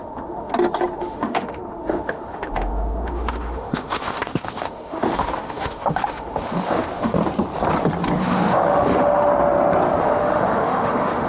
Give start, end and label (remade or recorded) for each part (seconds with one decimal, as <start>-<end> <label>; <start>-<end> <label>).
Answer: 0.0-0.5 remade; 0.5-1.0 recorded; 1.0-7.2 remade; 7.2-8.2 recorded; 8.2-9.3 remade; 9.3-10.0 recorded; 10.0-11.3 remade